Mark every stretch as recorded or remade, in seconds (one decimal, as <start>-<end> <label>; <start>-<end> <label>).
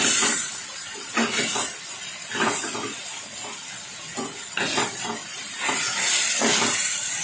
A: 0.0-7.2 recorded